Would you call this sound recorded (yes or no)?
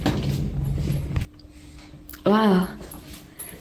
yes